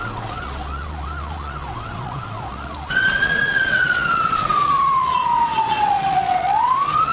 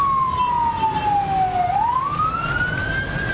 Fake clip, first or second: first